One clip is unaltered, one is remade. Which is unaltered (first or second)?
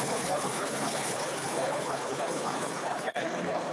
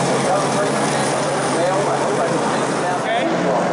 second